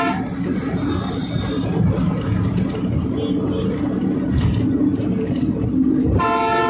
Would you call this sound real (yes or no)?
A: yes